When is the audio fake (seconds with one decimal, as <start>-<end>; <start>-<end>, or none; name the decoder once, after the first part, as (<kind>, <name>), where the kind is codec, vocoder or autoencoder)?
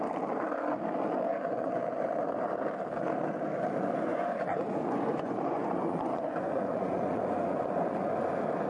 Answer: 1.3-1.8 (vocoder, Vocos); 4.1-8.1